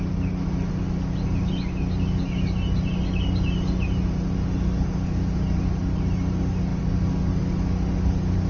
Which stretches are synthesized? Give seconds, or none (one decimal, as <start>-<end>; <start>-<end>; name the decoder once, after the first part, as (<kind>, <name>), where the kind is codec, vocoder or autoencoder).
none